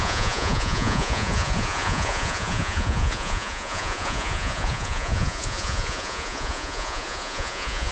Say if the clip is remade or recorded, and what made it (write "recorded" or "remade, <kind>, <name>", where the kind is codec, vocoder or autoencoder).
remade, vocoder, Vocos